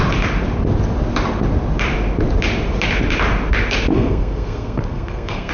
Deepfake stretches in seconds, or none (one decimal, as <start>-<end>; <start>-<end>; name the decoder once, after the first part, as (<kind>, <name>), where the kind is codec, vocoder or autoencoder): 3.9-5.5 (codec, SNAC)